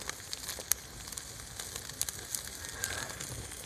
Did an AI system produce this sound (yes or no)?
no